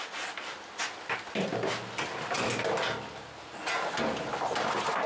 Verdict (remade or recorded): recorded